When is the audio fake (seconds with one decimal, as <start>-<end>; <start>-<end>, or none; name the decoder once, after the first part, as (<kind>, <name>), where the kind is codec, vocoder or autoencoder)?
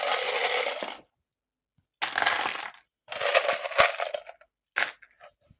none